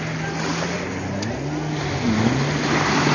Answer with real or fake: real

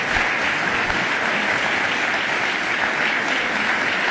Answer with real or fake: real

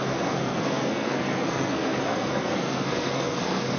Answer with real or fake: fake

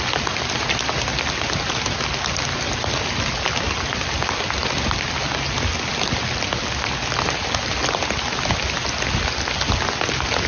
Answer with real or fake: real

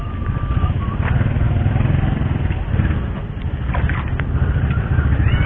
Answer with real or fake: real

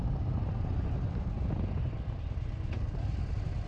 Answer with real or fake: real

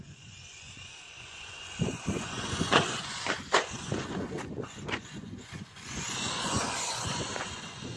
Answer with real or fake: fake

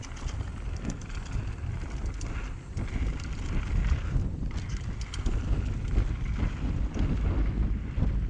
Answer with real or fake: real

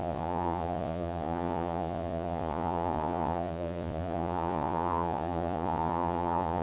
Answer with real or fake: fake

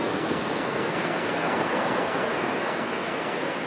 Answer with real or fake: fake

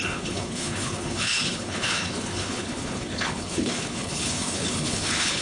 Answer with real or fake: fake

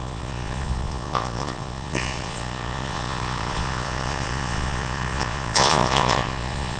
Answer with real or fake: fake